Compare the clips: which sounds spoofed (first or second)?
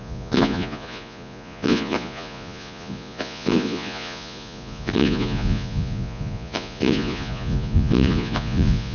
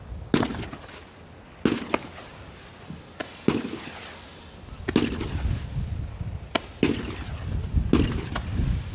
first